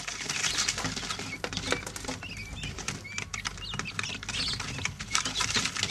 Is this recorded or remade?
recorded